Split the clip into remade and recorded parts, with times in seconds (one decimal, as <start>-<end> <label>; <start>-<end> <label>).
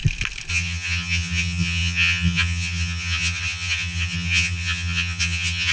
0.0-0.5 recorded; 0.5-5.7 remade